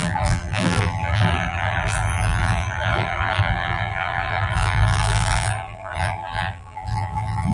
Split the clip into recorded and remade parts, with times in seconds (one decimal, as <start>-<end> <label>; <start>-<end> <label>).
0.0-7.5 remade